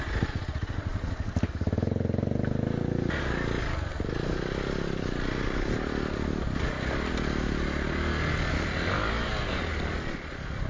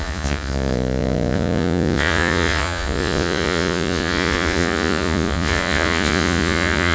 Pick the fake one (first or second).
second